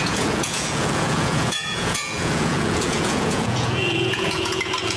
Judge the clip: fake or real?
fake